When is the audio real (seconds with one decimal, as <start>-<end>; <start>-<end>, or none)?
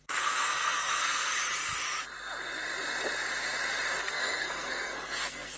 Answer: 1.3-4.0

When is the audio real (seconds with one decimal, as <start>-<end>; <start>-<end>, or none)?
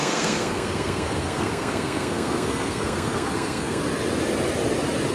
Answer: 3.8-5.1